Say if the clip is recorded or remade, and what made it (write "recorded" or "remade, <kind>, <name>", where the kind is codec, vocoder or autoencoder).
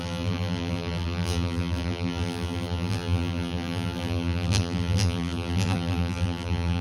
remade, vocoder, BigVGAN v2